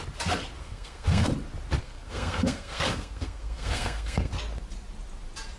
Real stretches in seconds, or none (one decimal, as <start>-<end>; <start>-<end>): 0.0-0.6; 1.3-1.8; 4.3-5.6